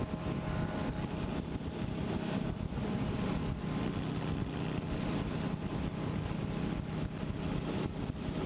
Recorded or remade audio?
recorded